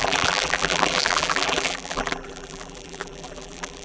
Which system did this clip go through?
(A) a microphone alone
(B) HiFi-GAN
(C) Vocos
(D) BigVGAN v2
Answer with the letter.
D